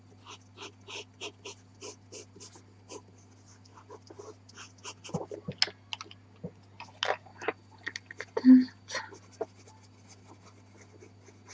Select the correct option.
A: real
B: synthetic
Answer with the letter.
A